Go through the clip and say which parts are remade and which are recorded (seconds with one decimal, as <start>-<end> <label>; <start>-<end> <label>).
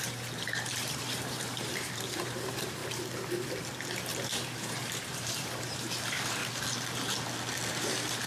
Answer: 0.0-2.8 remade; 2.8-3.6 recorded; 3.6-6.4 remade; 6.4-7.7 recorded; 7.7-8.3 remade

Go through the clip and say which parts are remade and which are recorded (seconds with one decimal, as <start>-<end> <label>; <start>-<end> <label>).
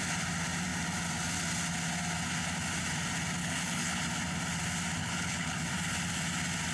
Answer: 0.0-3.4 recorded; 3.4-4.0 remade; 4.0-5.0 recorded; 5.0-5.7 remade; 5.7-6.7 recorded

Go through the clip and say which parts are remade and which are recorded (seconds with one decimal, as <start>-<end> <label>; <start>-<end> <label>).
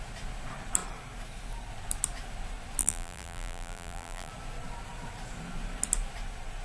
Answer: 0.0-2.8 recorded; 2.8-4.3 remade; 4.3-6.6 recorded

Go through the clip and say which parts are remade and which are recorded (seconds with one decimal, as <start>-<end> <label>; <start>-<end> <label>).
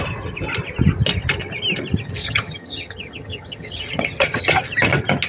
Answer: 0.0-2.2 recorded; 2.2-4.6 remade; 4.6-5.3 recorded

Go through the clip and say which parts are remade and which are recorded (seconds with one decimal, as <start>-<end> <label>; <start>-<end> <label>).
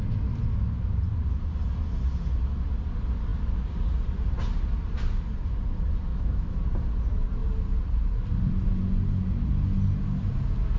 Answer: 0.0-6.1 recorded; 6.1-6.6 remade; 6.6-10.8 recorded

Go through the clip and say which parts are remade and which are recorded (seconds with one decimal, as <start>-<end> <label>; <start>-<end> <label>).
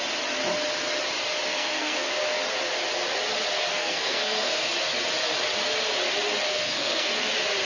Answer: 0.0-1.5 recorded; 1.5-2.2 remade; 2.2-3.7 recorded; 3.7-4.6 remade; 4.6-6.5 recorded; 6.5-7.1 remade; 7.1-7.6 recorded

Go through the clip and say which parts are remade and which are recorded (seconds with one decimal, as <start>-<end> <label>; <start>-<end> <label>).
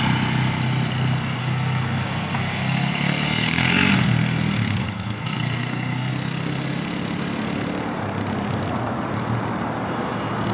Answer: 0.0-1.4 recorded; 1.4-3.9 remade; 3.9-4.8 recorded; 4.8-6.1 remade; 6.1-10.5 recorded